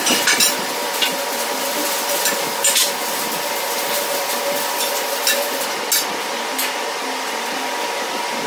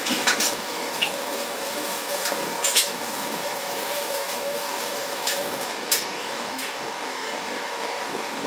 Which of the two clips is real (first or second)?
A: first